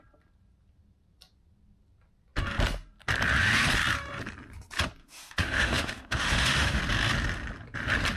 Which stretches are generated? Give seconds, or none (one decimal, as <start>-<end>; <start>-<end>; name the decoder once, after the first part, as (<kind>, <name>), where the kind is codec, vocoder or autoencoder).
5.0-6.8 (autoencoder, DAC-VAE)